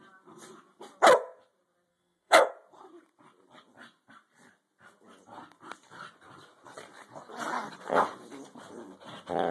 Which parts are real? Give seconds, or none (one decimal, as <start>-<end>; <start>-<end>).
0.0-1.9; 2.5-9.5